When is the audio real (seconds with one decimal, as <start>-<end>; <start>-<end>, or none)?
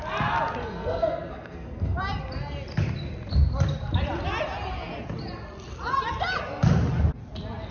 0.0-0.6; 2.0-7.7